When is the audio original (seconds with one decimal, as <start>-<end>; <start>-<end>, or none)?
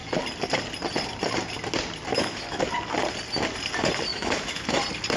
0.0-2.1; 2.7-4.1; 4.8-5.2